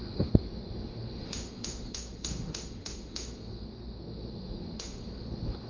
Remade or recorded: remade